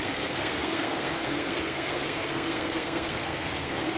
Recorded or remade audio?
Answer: remade